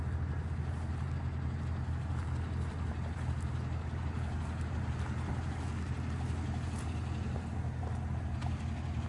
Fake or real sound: real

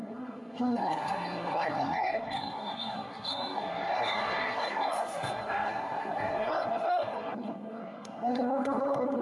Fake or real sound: fake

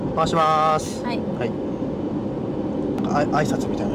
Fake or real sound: real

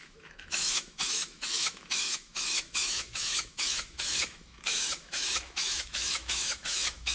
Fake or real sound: fake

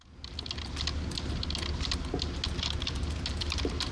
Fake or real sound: real